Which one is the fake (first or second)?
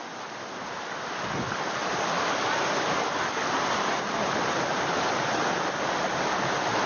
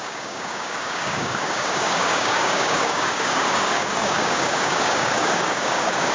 second